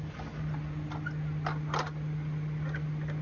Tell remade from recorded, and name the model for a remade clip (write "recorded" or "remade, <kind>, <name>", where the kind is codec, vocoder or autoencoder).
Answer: recorded